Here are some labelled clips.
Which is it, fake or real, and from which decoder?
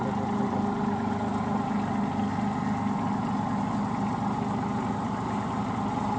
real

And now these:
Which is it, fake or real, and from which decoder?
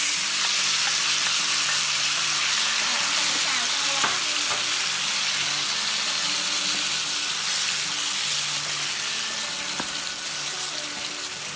real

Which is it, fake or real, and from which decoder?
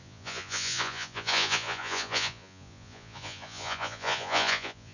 fake, vocoder, Vocos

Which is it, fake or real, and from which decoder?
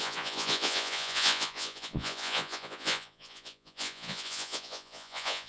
fake, vocoder, Vocos